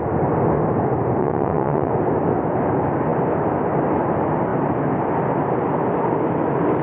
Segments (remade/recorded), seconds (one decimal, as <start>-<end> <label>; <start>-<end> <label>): 0.0-1.2 recorded; 1.2-1.9 remade; 1.9-6.8 recorded